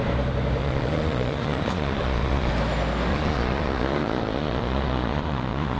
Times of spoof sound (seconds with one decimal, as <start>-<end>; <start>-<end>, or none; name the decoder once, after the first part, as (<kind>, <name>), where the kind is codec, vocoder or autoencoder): 0.6-2.5 (vocoder, Vocos); 3.1-5.8